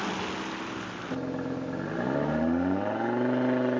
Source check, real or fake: real